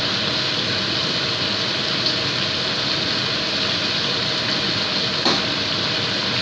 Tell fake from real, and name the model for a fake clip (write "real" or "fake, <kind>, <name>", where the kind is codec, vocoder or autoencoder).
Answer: real